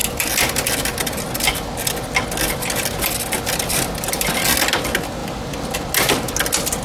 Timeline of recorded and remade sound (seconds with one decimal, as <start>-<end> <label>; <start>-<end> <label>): 0.0-5.2 recorded; 5.2-5.7 remade; 5.7-6.8 recorded